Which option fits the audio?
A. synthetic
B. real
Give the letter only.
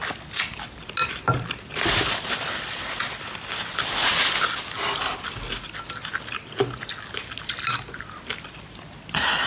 B